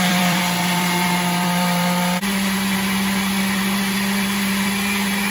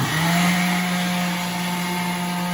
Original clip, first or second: second